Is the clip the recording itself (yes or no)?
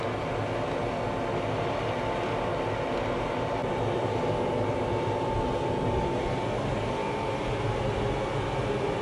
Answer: yes